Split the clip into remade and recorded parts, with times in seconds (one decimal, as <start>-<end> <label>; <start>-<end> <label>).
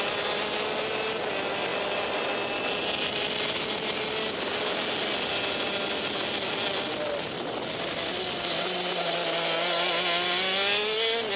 0.0-11.4 recorded